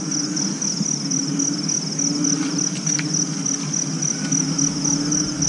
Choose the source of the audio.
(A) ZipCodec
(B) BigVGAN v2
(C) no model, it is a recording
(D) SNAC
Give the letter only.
C